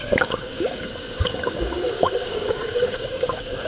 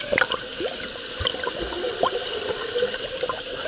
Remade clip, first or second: first